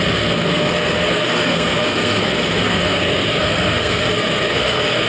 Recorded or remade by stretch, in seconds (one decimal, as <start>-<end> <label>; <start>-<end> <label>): 0.0-5.1 remade